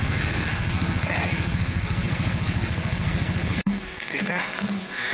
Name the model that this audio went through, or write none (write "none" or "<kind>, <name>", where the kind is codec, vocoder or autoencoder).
codec, SNAC